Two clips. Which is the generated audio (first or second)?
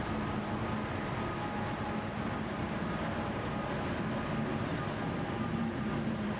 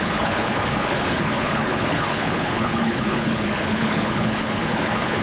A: second